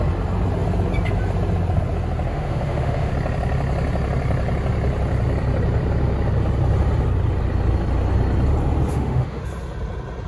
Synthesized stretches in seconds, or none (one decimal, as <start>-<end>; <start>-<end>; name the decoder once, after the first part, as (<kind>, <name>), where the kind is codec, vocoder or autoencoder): 2.3-3.1 (autoencoder, DAC-VAE); 8.9-9.4